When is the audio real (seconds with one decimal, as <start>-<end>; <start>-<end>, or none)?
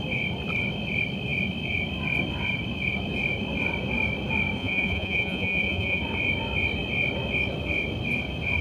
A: 0.0-4.6; 6.0-8.6